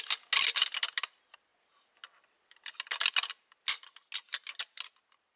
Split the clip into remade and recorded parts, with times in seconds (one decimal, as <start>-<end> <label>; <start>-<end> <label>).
0.0-5.4 recorded